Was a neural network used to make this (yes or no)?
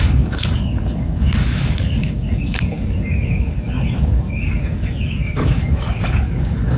yes